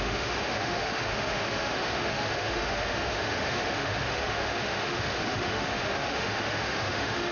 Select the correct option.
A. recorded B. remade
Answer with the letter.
B